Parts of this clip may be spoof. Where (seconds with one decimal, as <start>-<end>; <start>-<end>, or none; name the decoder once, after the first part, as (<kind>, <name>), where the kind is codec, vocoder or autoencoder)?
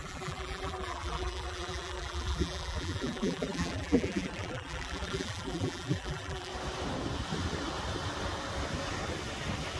0.0-6.5 (vocoder, BigVGAN v2)